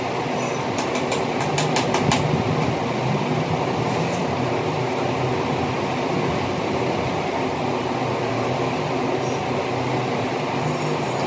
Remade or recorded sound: recorded